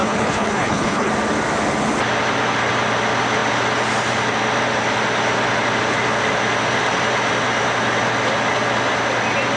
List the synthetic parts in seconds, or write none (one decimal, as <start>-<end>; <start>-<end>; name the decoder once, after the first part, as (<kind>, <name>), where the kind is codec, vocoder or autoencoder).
0.0-1.1 (codec, HILCodec)